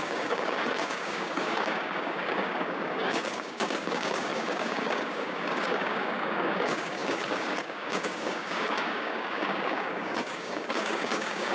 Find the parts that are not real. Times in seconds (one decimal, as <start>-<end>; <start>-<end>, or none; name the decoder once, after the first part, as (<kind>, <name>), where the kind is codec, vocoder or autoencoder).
0.0-11.5 (codec, DAC)